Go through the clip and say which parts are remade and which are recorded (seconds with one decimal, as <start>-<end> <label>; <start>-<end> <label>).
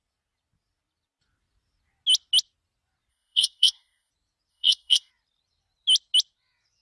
0.0-3.1 recorded; 3.1-4.1 remade; 4.1-4.5 recorded; 4.5-5.1 remade; 5.1-6.8 recorded